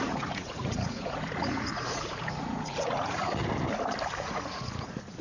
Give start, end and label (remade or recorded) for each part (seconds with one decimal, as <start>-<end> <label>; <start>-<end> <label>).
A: 0.0-3.4 remade; 3.4-4.1 recorded; 4.1-5.2 remade